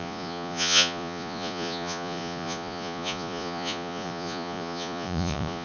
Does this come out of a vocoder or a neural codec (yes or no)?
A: yes